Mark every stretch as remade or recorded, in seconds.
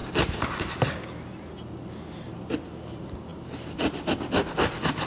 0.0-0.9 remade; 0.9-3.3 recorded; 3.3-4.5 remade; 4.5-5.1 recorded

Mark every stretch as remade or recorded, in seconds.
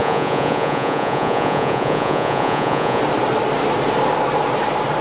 0.0-3.0 remade; 3.0-5.0 recorded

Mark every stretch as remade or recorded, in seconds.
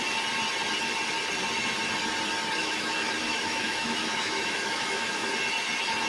0.0-2.6 recorded; 2.6-5.3 remade; 5.3-6.1 recorded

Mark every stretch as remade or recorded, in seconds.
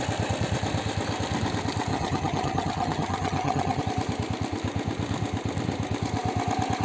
0.0-1.9 recorded; 1.9-3.8 remade; 3.8-6.8 recorded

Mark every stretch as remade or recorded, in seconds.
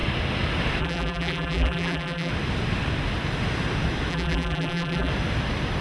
0.0-0.8 recorded; 0.8-2.3 remade; 2.3-4.1 recorded; 4.1-5.1 remade; 5.1-5.8 recorded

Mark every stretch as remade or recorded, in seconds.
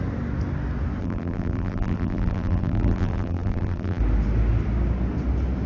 0.0-1.0 recorded; 1.0-4.0 remade; 4.0-5.7 recorded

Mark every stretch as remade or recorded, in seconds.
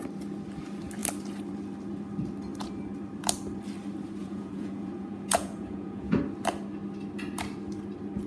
0.0-4.2 recorded; 4.2-6.2 remade; 6.2-8.3 recorded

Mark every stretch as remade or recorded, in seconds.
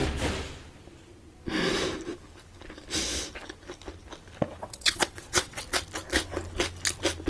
0.0-4.5 recorded; 4.5-5.6 remade; 5.6-7.3 recorded